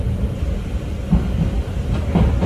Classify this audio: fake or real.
real